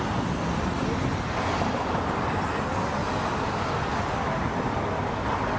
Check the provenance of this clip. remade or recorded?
recorded